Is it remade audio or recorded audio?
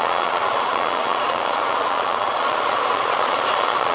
remade